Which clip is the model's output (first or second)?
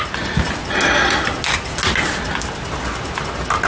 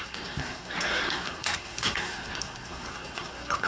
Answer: second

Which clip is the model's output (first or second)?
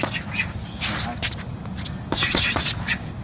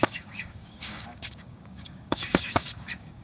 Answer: second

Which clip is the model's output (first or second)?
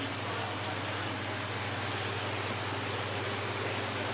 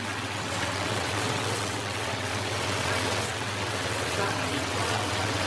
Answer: second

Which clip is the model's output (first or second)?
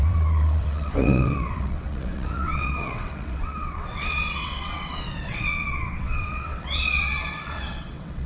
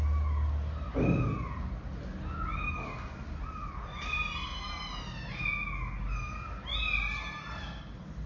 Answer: first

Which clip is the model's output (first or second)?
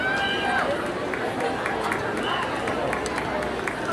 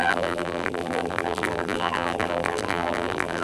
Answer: second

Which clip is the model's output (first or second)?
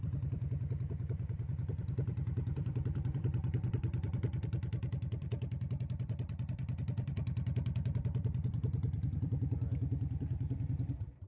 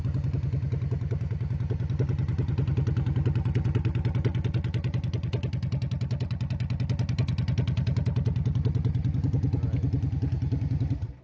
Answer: first